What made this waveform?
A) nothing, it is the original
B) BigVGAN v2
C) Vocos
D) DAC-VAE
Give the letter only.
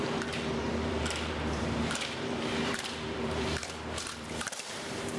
B